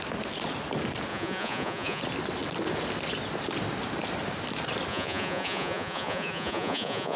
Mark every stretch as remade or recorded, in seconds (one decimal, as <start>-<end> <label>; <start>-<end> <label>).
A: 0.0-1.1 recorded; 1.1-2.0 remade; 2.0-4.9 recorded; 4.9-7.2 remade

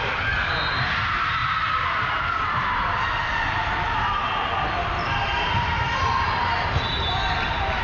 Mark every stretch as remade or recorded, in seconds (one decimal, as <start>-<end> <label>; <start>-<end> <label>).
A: 0.0-7.8 recorded

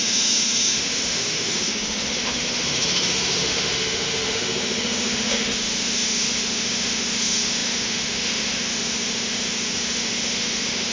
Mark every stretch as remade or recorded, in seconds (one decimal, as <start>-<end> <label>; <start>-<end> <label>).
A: 0.0-10.9 remade

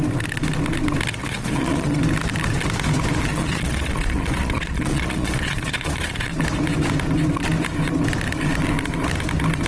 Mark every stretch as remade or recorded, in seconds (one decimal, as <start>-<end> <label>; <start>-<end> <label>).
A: 0.0-1.2 recorded; 1.2-2.0 remade; 2.0-3.3 recorded; 3.3-6.3 remade; 6.3-9.7 recorded

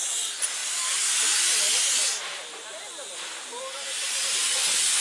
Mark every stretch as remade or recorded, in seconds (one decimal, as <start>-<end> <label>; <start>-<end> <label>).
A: 0.0-5.0 recorded